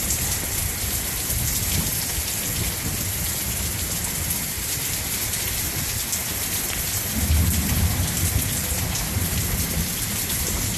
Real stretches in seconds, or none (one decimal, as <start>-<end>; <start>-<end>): 0.0-10.8